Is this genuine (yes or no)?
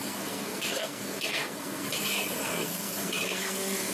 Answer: no